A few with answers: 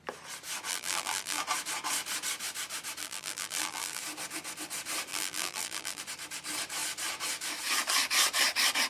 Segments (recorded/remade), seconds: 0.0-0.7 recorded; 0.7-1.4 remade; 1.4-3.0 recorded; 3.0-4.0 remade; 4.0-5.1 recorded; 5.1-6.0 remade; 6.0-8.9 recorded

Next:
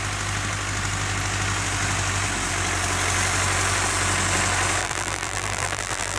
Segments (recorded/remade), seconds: 0.0-4.8 recorded; 4.8-6.2 remade

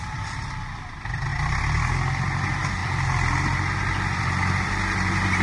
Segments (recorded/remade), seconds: 0.0-1.3 remade; 1.3-2.1 recorded; 2.1-5.4 remade

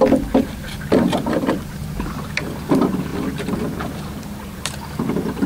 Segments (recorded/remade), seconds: 0.0-5.5 remade

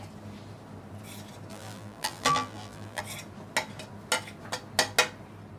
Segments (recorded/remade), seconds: 0.0-1.5 recorded; 1.5-3.0 remade; 3.0-5.6 recorded

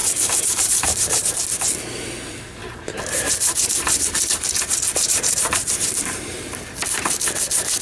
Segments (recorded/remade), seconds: 0.0-1.3 remade; 1.3-2.6 recorded; 2.6-6.5 remade; 6.5-7.8 recorded

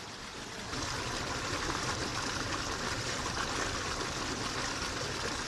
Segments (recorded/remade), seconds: 0.0-5.5 recorded